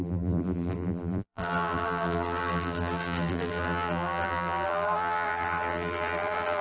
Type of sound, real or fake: fake